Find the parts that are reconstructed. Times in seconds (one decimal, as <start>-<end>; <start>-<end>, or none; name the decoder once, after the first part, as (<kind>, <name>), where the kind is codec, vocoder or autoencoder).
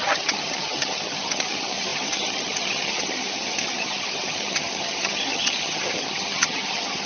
0.0-7.1 (vocoder, HiFi-GAN)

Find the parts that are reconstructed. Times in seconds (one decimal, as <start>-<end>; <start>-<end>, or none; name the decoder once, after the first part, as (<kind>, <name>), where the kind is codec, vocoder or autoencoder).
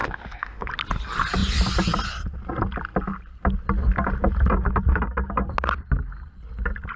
0.0-0.7 (autoencoder, DAC-VAE)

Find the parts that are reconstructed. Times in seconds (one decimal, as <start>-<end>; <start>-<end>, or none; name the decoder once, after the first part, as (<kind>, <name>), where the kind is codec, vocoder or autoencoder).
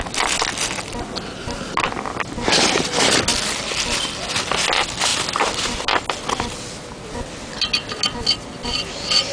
none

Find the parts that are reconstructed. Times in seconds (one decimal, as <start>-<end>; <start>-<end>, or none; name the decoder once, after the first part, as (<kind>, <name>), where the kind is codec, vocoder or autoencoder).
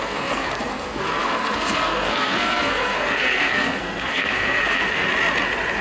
0.0-5.1 (codec, SNAC)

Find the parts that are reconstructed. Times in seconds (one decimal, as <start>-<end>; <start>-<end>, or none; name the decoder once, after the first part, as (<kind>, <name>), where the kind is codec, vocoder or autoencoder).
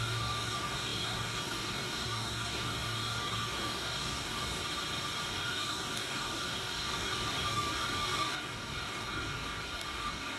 0.0-4.6 (codec, DAC); 5.3-10.4